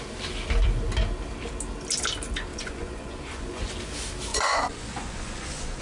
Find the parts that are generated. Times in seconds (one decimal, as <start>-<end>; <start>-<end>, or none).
2.5-3.7; 4.3-5.8